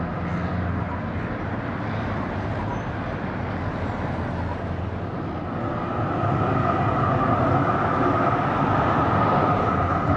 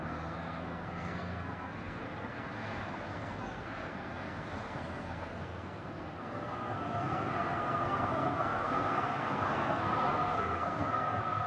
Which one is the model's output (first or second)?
second